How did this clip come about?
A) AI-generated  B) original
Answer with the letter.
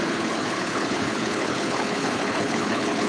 A